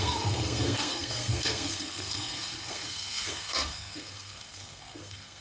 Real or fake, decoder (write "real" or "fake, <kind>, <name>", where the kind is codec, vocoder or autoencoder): fake, codec, SNAC